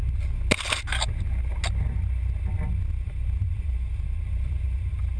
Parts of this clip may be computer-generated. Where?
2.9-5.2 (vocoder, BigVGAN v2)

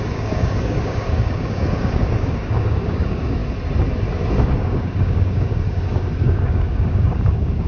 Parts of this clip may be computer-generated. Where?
0.0-3.4 (codec, DAC); 4.3-7.7

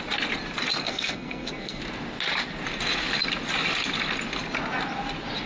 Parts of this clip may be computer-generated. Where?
0.8-1.8 (codec, SNAC)

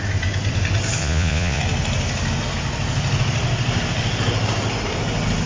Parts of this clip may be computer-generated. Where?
1.0-1.6 (vocoder, Vocos)

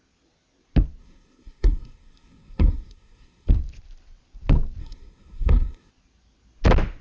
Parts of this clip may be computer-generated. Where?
1.0-3.5 (codec, SNAC); 4.8-5.9